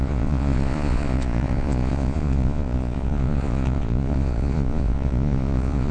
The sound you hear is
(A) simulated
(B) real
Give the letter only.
A